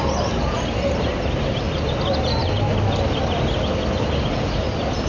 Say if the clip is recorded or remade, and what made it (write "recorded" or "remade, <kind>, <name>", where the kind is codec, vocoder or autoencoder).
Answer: recorded